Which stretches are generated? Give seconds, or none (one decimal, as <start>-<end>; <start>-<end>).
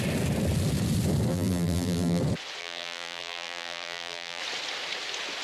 1.3-2.2; 2.6-4.4